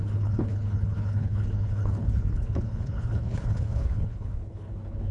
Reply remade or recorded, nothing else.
remade